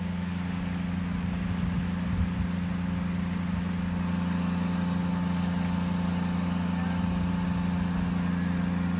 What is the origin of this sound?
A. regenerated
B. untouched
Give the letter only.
B